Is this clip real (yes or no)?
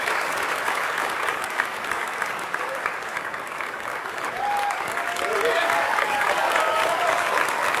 no